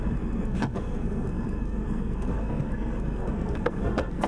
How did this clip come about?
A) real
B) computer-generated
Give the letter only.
B